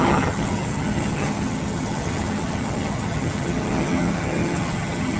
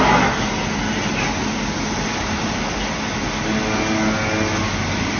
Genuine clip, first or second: second